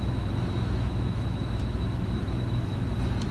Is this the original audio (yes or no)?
no